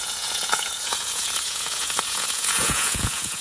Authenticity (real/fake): fake